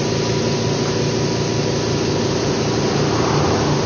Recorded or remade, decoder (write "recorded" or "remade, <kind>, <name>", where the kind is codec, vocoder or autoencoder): recorded